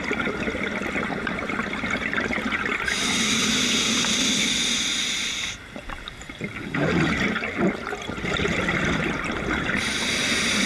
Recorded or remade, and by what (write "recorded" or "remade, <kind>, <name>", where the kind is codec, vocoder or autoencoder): recorded